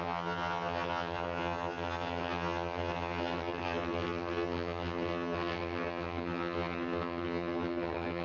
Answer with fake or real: fake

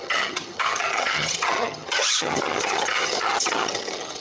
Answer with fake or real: fake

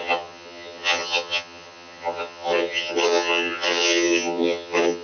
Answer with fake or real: fake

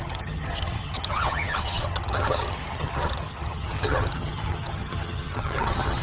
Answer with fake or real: fake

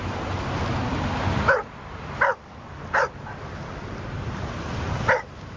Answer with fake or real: real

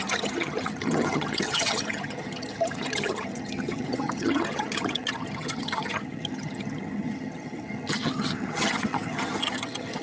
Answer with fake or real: fake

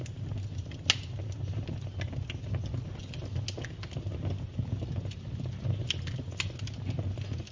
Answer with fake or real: real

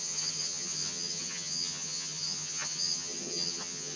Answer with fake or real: fake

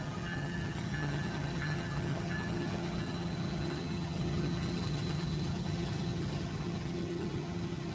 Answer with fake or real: fake